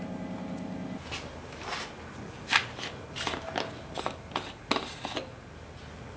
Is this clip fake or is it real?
real